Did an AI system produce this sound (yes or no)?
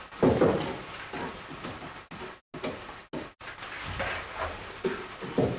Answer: no